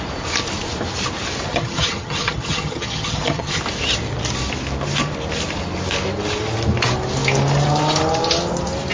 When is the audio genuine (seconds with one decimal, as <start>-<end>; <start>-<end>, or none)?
0.0-1.5; 3.6-8.9